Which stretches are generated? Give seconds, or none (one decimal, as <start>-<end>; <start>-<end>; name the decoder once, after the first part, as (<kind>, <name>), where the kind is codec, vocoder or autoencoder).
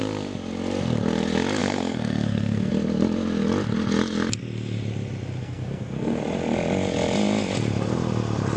1.6-2.7 (codec, SNAC); 5.4-6.2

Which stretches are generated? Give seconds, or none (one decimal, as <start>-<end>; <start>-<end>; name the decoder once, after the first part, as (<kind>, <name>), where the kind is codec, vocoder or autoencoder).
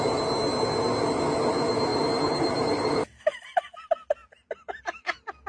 1.9-3.2 (vocoder, BigVGAN v2)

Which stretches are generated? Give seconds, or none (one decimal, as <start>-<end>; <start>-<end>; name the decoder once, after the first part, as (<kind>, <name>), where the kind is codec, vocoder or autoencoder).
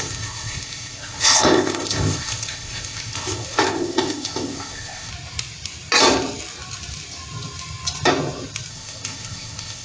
0.0-5.1 (codec, ZipCodec); 8.7-9.8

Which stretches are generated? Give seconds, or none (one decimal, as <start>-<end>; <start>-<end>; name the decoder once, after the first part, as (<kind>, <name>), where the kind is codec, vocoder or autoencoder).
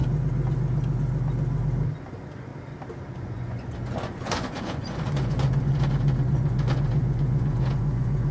2.1-2.5 (vocoder, Vocos); 3.1-8.3